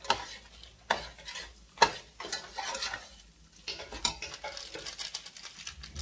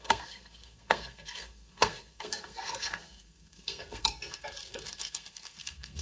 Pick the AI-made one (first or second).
second